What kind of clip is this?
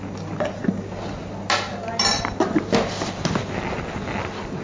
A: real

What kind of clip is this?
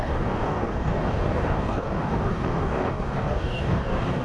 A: fake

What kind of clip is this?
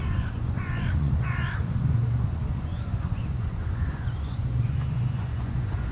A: fake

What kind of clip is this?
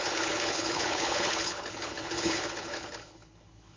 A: fake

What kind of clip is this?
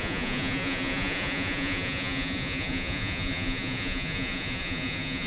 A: fake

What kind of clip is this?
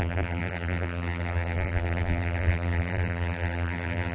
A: fake